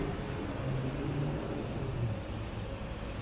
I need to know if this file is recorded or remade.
recorded